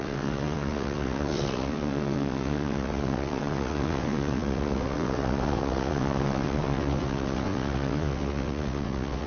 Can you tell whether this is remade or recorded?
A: remade